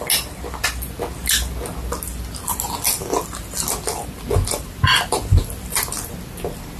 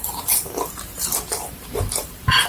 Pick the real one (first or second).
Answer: first